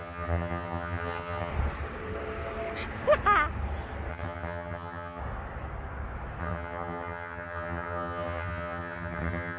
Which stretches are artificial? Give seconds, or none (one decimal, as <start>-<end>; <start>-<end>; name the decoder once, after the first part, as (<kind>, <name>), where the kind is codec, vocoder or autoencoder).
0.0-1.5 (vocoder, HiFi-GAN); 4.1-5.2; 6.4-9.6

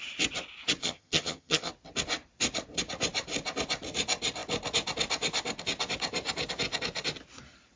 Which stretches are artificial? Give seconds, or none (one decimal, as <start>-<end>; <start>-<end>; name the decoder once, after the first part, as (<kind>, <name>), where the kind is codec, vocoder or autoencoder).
0.8-1.7 (vocoder, HiFi-GAN)

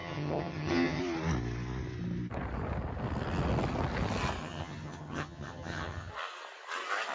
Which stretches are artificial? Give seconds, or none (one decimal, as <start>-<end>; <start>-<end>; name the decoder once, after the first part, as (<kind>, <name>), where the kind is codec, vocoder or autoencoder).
0.0-1.0 (vocoder, HiFi-GAN); 4.4-6.1

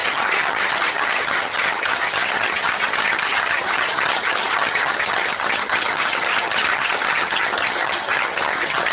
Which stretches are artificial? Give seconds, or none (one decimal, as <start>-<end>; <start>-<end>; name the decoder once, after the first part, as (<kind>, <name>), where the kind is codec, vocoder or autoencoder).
0.0-8.9 (vocoder, HiFi-GAN)